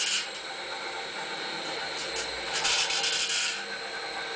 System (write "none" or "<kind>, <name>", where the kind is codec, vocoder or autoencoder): none